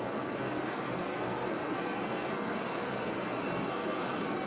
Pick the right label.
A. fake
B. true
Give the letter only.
A